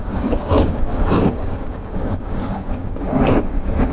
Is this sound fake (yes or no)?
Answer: yes